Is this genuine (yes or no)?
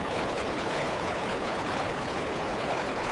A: no